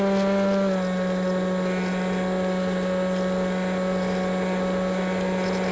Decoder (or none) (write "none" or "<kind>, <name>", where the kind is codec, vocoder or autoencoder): none